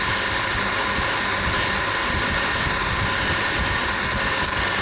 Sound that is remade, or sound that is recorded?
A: recorded